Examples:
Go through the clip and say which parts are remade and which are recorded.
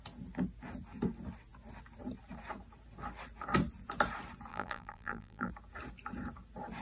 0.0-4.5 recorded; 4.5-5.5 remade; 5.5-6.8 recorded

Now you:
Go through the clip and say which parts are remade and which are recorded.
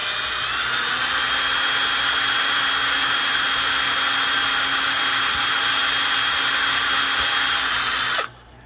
0.0-8.7 recorded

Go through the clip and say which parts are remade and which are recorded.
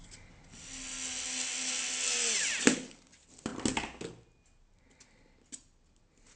0.0-6.4 recorded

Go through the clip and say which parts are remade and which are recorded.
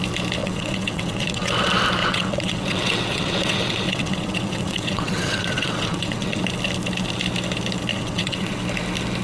0.0-0.4 recorded; 0.4-1.5 remade; 1.5-2.0 recorded; 2.0-6.4 remade; 6.4-7.9 recorded; 7.9-8.6 remade; 8.6-9.2 recorded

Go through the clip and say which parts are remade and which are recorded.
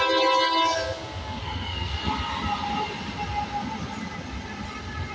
0.0-1.4 recorded; 1.4-2.1 remade; 2.1-5.1 recorded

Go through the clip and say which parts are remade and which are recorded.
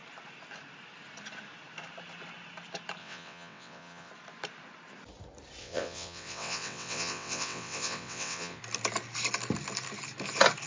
0.0-3.0 recorded; 3.0-4.1 remade; 4.1-5.6 recorded; 5.6-8.6 remade; 8.6-10.7 recorded